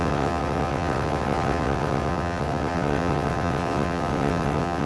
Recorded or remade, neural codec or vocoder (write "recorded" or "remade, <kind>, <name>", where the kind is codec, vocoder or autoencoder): remade, vocoder, WaveNeXt